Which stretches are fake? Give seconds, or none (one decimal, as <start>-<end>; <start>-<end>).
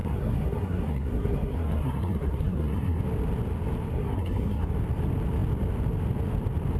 0.0-3.0; 3.9-4.7